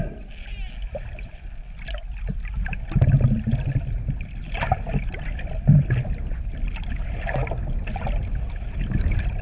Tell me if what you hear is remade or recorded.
recorded